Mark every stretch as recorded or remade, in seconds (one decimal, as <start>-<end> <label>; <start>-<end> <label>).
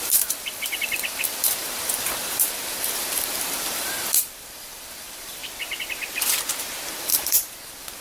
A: 0.0-5.4 remade; 5.4-6.9 recorded; 6.9-8.0 remade